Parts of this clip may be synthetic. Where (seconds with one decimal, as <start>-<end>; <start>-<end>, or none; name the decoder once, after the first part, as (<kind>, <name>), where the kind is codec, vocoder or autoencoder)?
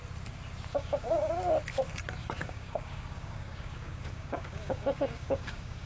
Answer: 0.7-1.3 (codec, DAC); 2.2-5.9